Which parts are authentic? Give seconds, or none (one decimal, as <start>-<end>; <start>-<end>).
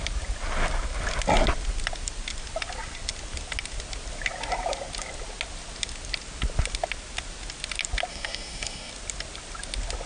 0.0-8.1; 8.9-10.1